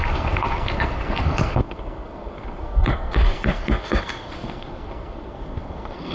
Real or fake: fake